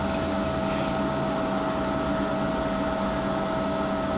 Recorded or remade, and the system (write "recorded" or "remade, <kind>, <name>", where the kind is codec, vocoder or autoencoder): recorded